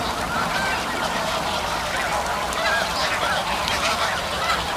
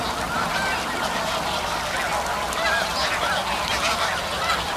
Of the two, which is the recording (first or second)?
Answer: second